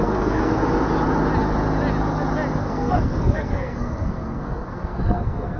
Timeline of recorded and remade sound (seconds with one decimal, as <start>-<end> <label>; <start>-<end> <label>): 0.0-0.6 remade; 0.6-2.6 recorded; 2.6-5.6 remade